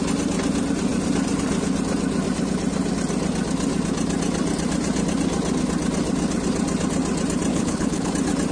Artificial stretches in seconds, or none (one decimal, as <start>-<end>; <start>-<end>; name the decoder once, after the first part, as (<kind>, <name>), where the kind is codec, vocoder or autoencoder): 7.5-8.1 (codec, HILCodec)